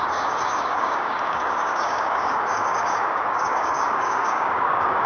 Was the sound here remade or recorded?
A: remade